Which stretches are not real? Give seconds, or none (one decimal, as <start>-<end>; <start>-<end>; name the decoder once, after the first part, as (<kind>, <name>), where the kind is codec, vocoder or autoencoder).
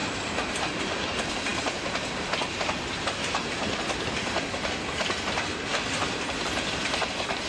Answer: none